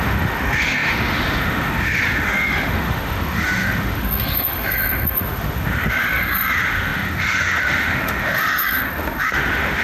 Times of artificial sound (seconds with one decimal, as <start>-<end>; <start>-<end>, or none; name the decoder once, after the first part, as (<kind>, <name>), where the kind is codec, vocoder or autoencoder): 0.0-9.8 (autoencoder, DAC-VAE)